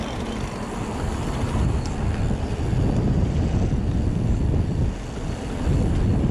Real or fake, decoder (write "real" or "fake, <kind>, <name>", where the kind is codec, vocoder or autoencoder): real